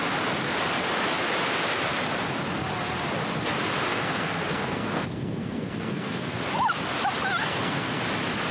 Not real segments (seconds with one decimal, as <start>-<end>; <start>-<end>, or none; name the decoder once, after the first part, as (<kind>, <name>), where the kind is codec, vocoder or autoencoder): 3.9-6.4 (codec, SNAC); 7.4-8.0